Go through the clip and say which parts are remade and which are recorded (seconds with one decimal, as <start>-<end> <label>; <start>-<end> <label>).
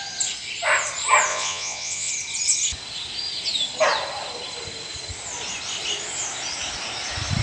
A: 0.0-1.3 recorded; 1.3-2.1 remade; 2.1-7.4 recorded